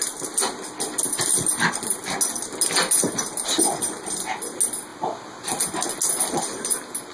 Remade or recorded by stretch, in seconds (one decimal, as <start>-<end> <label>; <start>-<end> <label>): 0.0-7.1 recorded